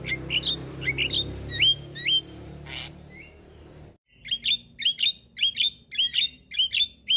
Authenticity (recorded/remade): recorded